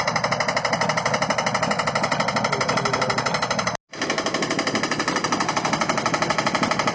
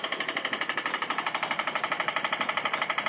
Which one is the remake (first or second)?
second